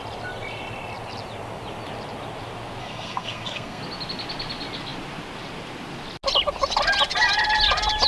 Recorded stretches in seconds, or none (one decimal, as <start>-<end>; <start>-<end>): 0.0-2.8; 3.8-8.1